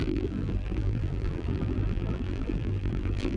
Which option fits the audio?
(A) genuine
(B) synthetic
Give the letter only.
B